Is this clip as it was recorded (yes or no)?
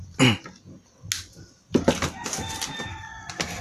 yes